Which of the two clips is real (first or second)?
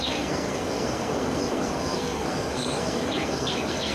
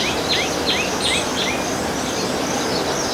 second